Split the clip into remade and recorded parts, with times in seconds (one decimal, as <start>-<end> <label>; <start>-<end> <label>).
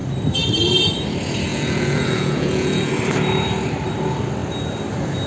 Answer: 0.0-1.5 recorded; 1.5-3.0 remade; 3.0-5.3 recorded